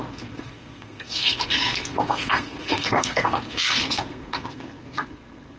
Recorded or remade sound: remade